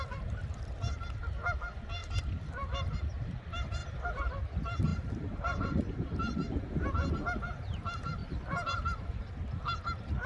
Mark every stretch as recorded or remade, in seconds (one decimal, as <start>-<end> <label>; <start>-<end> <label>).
0.0-2.0 recorded; 2.0-3.4 remade; 3.4-8.2 recorded; 8.2-9.3 remade; 9.3-10.3 recorded